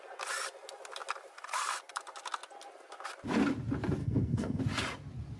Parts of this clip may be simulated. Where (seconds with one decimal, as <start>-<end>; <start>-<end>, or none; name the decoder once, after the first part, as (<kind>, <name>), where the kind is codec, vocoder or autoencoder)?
4.0-4.6 (codec, SNAC)